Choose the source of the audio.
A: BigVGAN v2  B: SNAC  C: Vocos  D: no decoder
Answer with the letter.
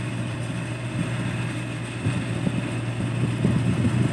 D